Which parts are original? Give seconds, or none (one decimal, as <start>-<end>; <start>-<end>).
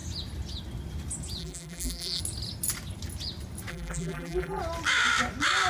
0.0-1.4; 2.2-3.7; 4.6-5.7